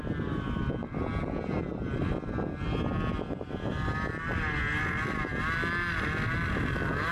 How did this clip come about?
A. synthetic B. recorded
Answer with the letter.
B